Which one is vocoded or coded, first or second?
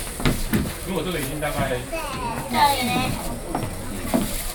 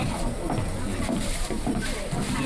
second